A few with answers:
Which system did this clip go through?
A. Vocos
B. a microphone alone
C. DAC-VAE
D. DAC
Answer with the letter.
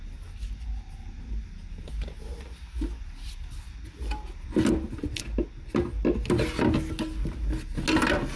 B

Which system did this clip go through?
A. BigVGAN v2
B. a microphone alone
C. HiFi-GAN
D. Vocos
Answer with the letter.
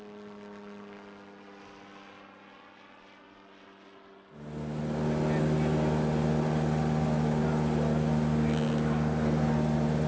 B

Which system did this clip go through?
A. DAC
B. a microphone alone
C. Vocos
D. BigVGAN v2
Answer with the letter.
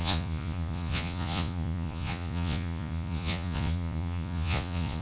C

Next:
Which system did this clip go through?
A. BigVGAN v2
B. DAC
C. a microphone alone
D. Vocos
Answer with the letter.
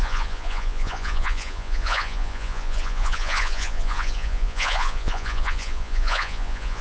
D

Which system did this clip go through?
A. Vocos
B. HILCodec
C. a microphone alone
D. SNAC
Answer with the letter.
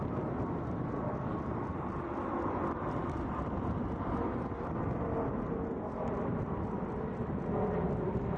C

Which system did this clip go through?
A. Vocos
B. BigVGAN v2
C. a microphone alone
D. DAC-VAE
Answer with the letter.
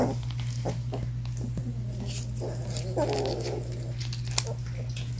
C